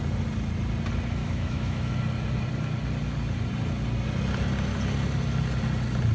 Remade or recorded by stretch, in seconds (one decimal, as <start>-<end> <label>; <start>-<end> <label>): 0.0-1.2 recorded; 1.2-1.9 remade; 1.9-6.1 recorded

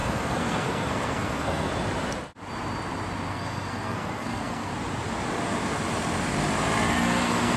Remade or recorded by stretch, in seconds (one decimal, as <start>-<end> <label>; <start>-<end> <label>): 0.0-1.7 remade; 1.7-3.3 recorded; 3.3-4.7 remade; 4.7-6.9 recorded; 6.9-7.6 remade

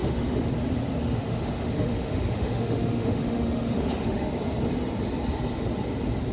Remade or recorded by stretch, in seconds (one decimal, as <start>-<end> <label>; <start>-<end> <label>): 0.0-0.5 remade; 0.5-1.0 recorded; 1.0-4.3 remade; 4.3-6.3 recorded

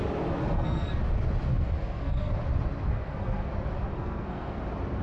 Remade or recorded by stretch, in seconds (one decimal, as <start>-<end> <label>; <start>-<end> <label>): 0.0-0.4 recorded; 0.4-1.0 remade; 1.0-1.5 recorded; 1.5-2.3 remade; 2.3-2.9 recorded; 2.9-3.5 remade; 3.5-3.9 recorded; 3.9-4.6 remade; 4.6-5.0 recorded

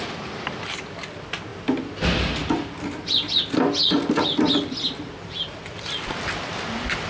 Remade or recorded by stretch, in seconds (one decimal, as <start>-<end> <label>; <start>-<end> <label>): 0.0-7.1 recorded

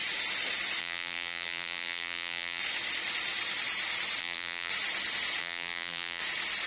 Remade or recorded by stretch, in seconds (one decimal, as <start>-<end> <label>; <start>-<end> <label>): 0.0-0.8 recorded; 0.8-2.6 remade; 2.6-4.2 recorded; 4.2-4.7 remade; 4.7-5.4 recorded; 5.4-6.2 remade; 6.2-6.7 recorded

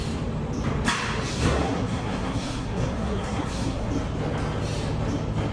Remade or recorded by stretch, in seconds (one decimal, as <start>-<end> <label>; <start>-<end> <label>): 0.0-1.3 recorded; 1.3-3.9 remade; 3.9-5.5 recorded

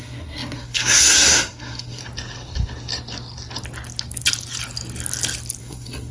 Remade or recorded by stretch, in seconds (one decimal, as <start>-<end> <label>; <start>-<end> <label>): 0.0-2.0 remade; 2.0-5.6 recorded; 5.6-6.1 remade